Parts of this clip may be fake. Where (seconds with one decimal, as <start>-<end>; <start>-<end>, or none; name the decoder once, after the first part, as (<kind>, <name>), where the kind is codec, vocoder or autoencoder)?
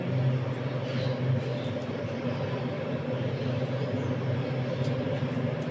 none